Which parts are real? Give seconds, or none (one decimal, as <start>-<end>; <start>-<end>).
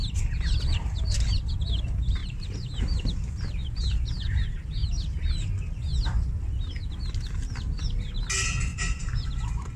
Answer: 1.4-2.2; 2.8-8.7; 9.4-9.8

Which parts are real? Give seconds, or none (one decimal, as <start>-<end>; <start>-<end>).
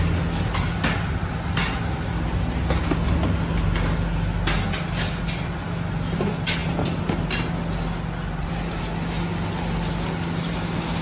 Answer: 0.0-11.0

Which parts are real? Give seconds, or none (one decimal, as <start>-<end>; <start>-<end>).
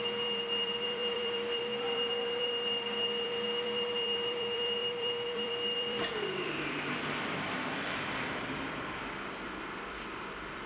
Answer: none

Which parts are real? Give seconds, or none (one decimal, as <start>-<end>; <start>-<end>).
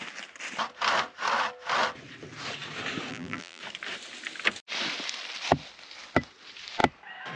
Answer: 0.0-3.1; 3.6-7.4